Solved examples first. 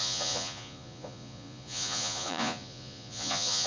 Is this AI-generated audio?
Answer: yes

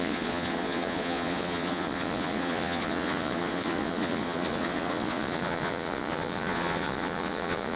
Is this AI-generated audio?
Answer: yes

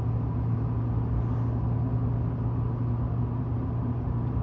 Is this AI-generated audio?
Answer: no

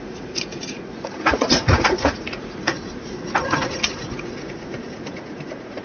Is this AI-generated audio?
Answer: yes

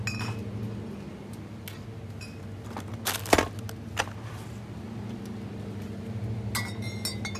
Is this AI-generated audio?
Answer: no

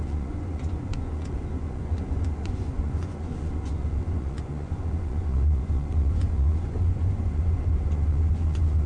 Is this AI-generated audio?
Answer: yes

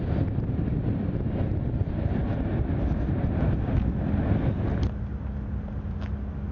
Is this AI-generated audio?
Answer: no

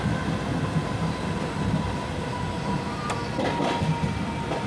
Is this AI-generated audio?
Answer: no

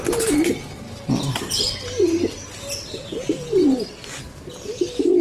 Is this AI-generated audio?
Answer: no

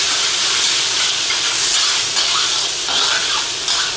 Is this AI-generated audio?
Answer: no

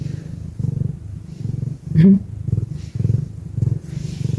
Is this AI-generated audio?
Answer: no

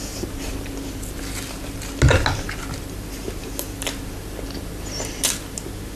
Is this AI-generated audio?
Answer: no